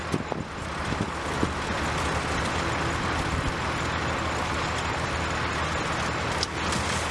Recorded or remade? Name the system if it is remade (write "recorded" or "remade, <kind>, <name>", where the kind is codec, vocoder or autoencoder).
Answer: recorded